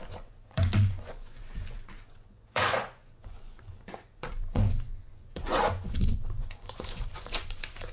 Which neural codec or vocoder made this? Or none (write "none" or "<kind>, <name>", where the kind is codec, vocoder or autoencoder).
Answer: vocoder, Vocos